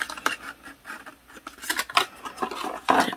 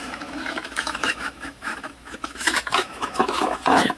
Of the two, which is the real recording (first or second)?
first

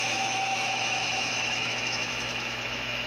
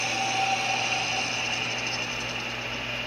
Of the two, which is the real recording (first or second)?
second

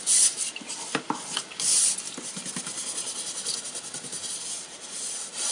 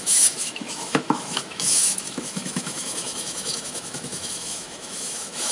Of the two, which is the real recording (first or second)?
first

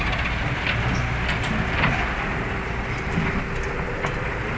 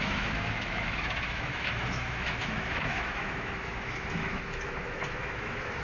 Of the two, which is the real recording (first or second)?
first